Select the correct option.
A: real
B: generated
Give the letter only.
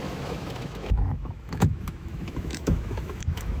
B